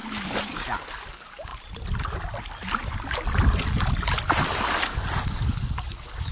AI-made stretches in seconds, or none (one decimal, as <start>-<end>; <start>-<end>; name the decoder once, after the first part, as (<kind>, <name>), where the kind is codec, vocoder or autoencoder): 1.1-1.5 (codec, DAC); 5.3-6.3